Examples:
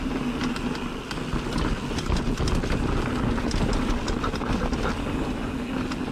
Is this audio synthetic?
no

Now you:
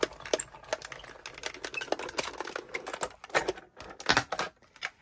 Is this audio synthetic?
no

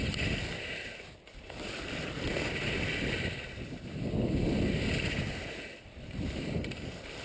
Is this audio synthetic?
no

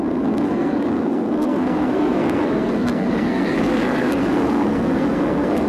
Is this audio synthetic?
yes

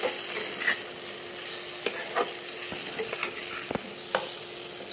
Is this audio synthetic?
no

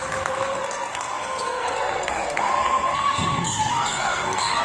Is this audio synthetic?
yes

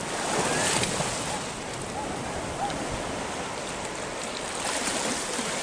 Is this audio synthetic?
no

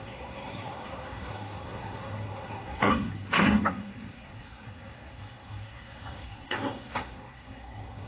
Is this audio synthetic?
yes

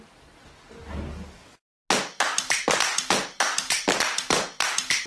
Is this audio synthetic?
no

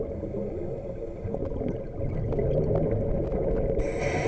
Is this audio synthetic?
no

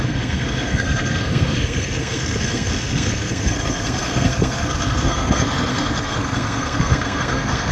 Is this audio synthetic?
yes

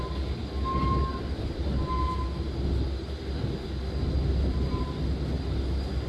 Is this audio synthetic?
no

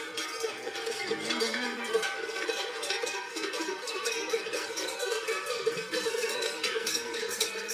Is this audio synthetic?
yes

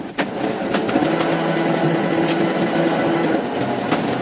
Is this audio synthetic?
no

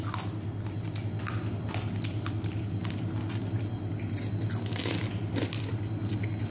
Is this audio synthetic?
no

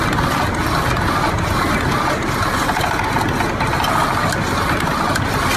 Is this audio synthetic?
no